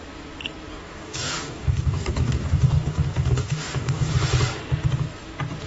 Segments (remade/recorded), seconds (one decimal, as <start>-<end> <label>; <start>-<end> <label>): 0.0-0.7 recorded; 0.7-4.1 remade; 4.1-5.7 recorded